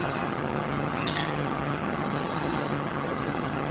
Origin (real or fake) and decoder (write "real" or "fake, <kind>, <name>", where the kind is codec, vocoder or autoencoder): fake, vocoder, HiFi-GAN